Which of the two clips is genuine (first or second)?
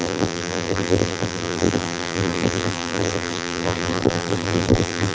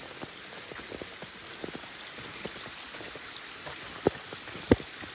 second